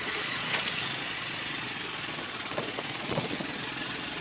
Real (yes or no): no